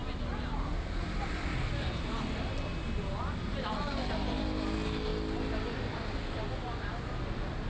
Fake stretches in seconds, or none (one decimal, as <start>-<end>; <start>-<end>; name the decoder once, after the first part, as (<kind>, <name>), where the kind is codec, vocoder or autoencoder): none

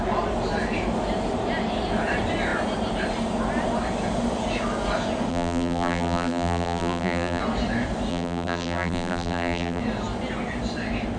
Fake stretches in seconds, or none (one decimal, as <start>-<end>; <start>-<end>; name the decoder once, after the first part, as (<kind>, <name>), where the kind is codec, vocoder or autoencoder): 5.3-7.4 (vocoder, BigVGAN v2); 8.1-9.8